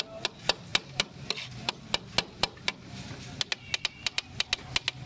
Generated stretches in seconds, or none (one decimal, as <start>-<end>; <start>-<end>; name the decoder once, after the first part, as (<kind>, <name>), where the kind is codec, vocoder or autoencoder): none